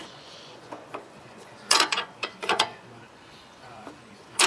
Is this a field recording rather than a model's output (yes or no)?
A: no